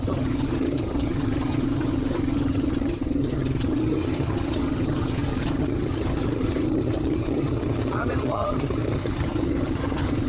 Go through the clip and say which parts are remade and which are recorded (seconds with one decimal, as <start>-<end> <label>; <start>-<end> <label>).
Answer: 0.0-10.3 remade